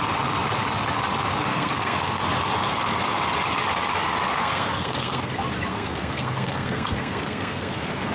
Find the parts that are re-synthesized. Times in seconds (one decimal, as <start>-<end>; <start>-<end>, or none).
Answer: 1.5-2.2; 4.3-5.3; 5.7-8.1